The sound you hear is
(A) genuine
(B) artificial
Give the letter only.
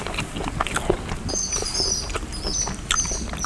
A